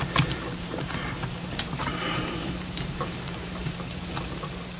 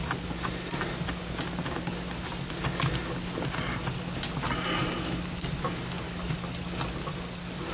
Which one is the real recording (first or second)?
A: second